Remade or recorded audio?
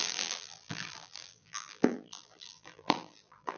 remade